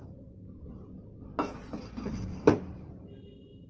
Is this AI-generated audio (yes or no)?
no